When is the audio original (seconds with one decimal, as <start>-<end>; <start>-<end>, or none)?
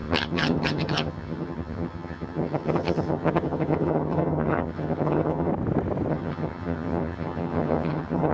5.5-6.1